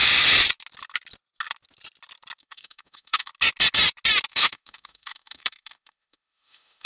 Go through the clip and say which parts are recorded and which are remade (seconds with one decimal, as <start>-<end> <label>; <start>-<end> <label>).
0.0-2.4 recorded; 2.4-3.3 remade; 3.3-4.3 recorded; 4.3-6.9 remade